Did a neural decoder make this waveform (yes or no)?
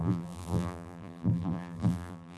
yes